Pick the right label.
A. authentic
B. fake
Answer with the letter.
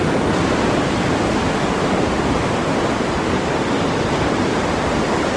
A